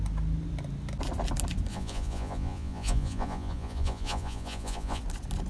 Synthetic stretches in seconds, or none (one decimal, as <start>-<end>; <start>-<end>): 1.7-5.0